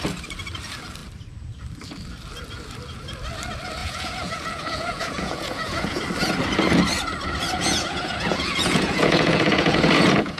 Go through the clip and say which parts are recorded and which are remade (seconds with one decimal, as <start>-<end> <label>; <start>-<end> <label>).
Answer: 0.0-3.8 recorded; 3.8-6.0 remade; 6.0-7.6 recorded; 7.6-10.4 remade